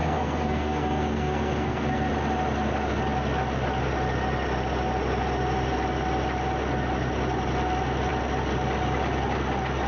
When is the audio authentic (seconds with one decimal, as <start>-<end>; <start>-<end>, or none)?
2.1-9.9